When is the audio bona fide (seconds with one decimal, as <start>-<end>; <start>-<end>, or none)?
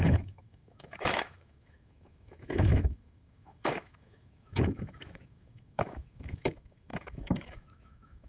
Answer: none